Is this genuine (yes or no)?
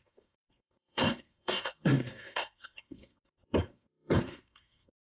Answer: no